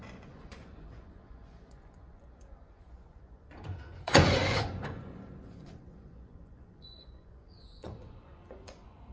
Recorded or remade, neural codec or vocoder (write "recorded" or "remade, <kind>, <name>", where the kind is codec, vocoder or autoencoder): remade, vocoder, Vocos